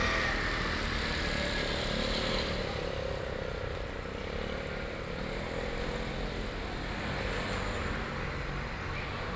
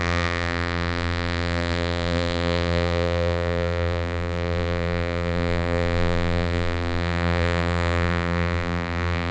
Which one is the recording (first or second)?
first